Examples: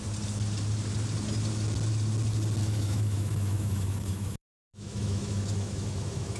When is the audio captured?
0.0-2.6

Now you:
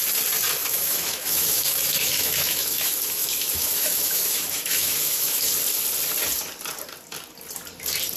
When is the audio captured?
0.0-0.6; 5.5-8.2